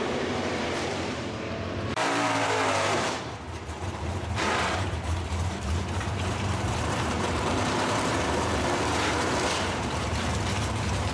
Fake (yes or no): yes